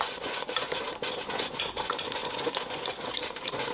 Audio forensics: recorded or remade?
remade